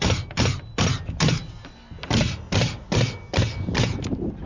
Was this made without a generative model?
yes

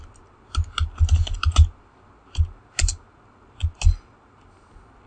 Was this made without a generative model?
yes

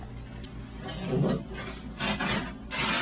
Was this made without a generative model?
yes